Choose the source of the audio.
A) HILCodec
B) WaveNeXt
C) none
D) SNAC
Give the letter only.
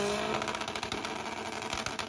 C